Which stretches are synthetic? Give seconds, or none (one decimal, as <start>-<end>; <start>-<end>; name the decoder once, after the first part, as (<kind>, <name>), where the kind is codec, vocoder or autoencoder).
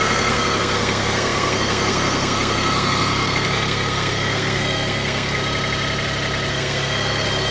0.0-5.4 (codec, SNAC); 6.5-7.5